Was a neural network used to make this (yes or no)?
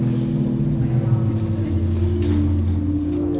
no